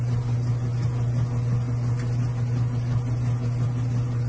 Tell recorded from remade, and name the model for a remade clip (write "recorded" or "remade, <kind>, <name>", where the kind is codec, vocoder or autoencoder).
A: recorded